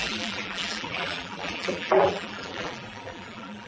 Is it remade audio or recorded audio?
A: remade